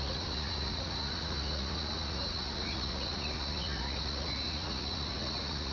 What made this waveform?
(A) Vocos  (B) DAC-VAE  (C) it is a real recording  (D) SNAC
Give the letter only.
A